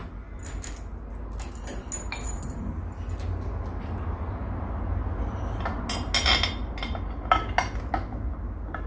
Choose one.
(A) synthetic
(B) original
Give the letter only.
B